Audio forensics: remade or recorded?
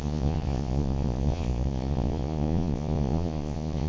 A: remade